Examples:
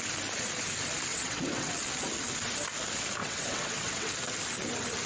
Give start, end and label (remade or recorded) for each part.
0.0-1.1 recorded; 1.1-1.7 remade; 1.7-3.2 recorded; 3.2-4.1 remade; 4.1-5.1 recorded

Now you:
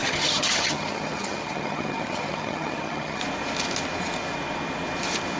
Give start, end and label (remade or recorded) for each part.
0.0-3.2 remade; 3.2-5.4 recorded

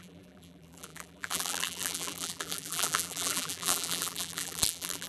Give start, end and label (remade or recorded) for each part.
0.0-5.1 remade

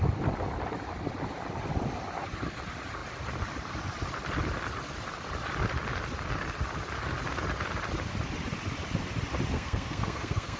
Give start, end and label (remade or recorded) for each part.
0.0-9.5 recorded; 9.5-10.6 remade

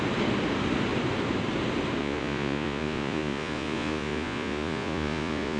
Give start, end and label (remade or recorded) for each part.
0.0-2.0 recorded; 2.0-5.6 remade

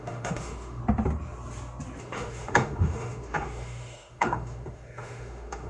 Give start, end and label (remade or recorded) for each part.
0.0-0.8 remade; 0.8-2.0 recorded; 2.0-5.7 remade

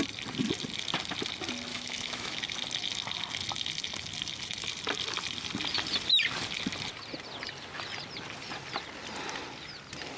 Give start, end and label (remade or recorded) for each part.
0.0-1.7 recorded; 1.7-2.4 remade; 2.4-10.2 recorded